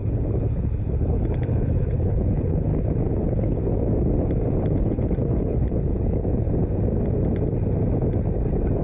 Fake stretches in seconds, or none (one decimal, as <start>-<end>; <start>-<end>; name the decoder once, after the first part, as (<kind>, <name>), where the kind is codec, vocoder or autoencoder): 0.0-2.7 (codec, HILCodec); 3.2-3.9; 4.6-6.2